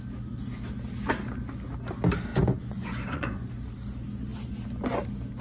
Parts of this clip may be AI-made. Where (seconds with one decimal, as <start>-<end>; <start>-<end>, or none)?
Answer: 2.3-3.5